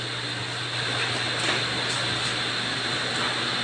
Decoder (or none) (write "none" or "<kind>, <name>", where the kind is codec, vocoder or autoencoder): none